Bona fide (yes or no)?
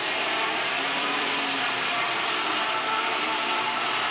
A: no